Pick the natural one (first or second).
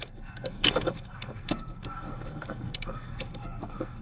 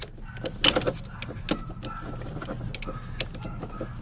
second